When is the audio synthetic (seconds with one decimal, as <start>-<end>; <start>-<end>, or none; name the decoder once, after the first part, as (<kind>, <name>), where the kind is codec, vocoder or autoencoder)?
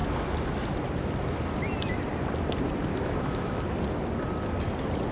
2.9-3.6 (autoencoder, DAC-VAE)